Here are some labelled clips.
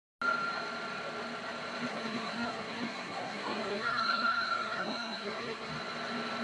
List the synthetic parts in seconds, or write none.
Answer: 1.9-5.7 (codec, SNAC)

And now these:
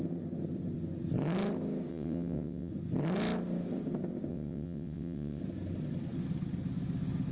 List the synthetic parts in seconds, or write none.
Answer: 1.9-2.7 (vocoder, WaveNeXt); 4.3-5.4

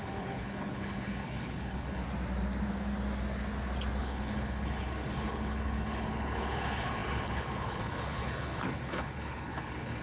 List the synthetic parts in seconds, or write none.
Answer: 0.0-2.0 (codec, HILCodec); 4.0-10.0

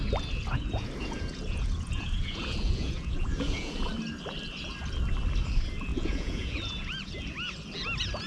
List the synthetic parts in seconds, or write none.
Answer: 0.5-3.9 (vocoder, Vocos); 5.9-7.1

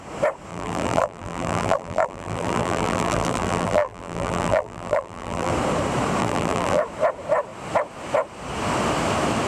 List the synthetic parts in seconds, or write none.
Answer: 0.5-5.5 (vocoder, BigVGAN v2); 6.2-6.8

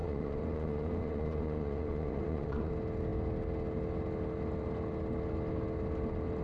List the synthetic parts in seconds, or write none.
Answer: 0.0-2.7 (vocoder, Vocos)